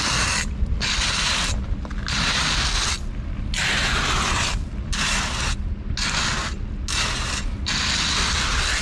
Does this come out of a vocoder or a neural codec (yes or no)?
no